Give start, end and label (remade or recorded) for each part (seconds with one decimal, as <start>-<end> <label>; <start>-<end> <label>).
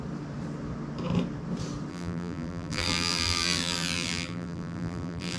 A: 0.0-1.9 recorded; 1.9-5.4 remade